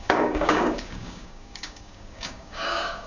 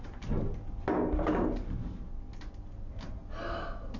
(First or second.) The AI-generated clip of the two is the first